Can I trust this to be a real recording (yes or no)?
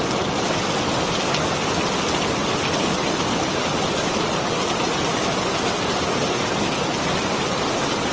yes